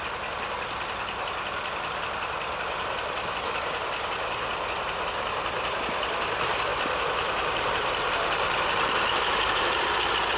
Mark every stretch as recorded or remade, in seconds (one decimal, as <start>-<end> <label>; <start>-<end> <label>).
0.0-6.7 recorded; 6.7-9.9 remade; 9.9-10.4 recorded